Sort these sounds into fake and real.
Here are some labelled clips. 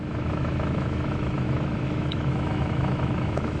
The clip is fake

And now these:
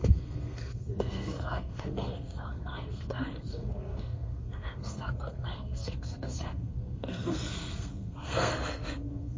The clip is fake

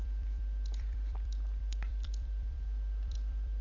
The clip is fake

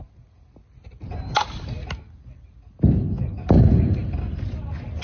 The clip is real